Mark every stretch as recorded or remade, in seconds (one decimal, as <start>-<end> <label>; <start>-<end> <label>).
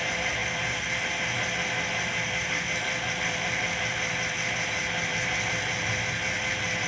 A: 0.0-6.9 recorded